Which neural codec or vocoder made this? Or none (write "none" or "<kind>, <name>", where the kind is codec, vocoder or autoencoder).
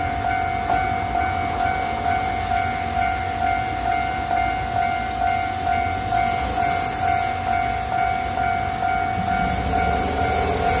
none